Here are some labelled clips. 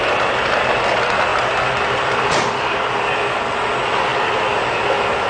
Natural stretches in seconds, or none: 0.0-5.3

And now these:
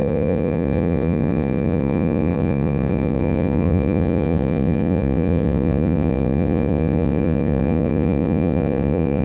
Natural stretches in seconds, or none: none

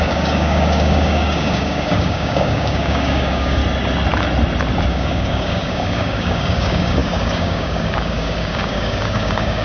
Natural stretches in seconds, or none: 3.6-4.9

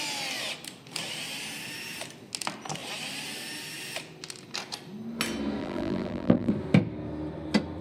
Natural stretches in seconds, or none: 0.0-5.6; 6.5-7.8

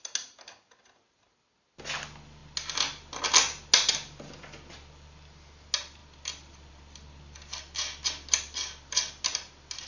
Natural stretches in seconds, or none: 0.0-9.9

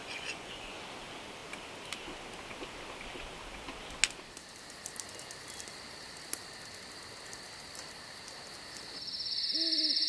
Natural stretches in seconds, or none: 0.8-10.1